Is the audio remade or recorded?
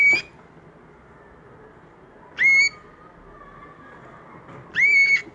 recorded